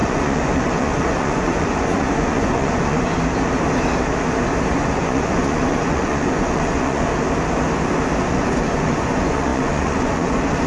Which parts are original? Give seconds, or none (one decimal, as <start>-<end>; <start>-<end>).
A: 3.1-4.7; 7.1-8.2